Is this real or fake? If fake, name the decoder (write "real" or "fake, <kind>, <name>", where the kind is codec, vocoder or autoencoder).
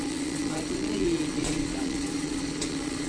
fake, vocoder, Vocos